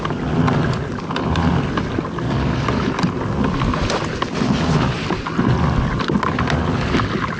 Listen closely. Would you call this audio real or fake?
real